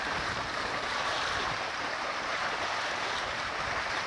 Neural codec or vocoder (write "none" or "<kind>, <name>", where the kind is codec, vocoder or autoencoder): vocoder, BigVGAN v2